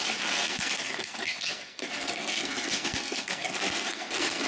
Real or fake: fake